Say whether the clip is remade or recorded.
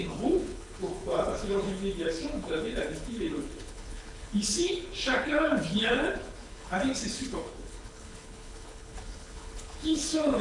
remade